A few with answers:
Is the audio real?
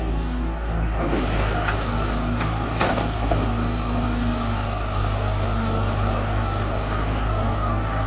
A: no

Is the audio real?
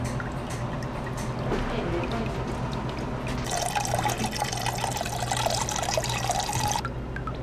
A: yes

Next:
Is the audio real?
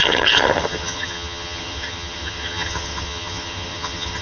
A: no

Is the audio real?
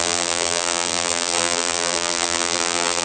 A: no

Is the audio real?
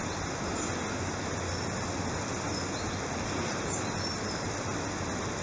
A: yes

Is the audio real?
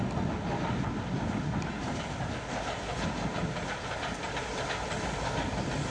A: yes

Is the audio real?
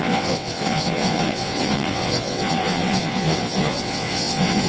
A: no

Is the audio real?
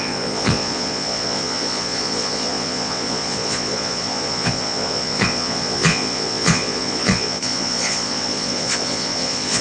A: no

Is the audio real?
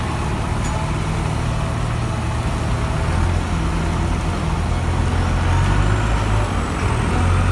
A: yes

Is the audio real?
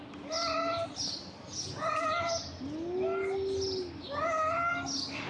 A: yes